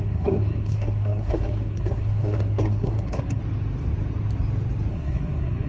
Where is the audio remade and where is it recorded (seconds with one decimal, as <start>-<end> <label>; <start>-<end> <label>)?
0.0-3.4 remade; 3.4-4.9 recorded; 4.9-5.7 remade